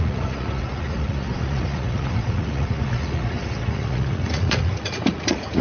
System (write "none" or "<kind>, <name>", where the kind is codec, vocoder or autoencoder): vocoder, Vocos